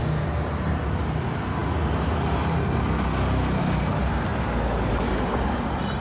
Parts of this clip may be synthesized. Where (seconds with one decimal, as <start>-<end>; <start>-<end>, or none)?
none

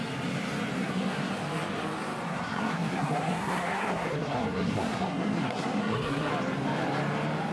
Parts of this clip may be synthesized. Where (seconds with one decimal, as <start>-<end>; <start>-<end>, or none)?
0.8-1.3; 2.3-6.3

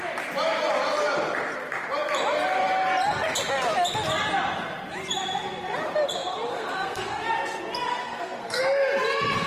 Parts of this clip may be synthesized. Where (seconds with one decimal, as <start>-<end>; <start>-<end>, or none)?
6.5-7.3; 7.9-8.6

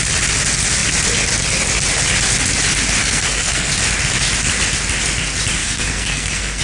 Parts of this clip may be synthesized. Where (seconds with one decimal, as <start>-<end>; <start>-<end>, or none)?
3.0-3.7; 5.6-6.6